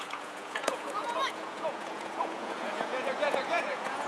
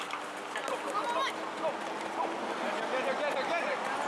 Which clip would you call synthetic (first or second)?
first